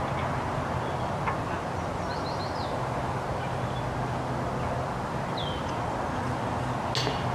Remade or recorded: recorded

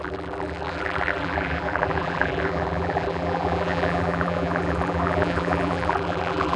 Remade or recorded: remade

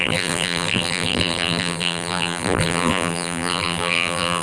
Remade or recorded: remade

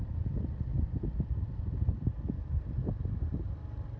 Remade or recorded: remade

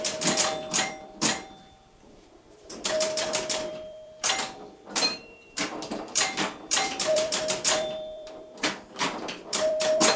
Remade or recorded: remade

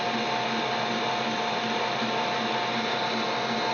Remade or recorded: recorded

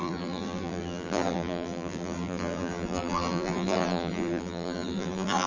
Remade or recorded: remade